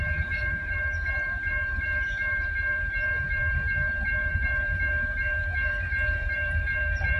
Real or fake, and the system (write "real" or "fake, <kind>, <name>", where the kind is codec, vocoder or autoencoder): fake, vocoder, BigVGAN v2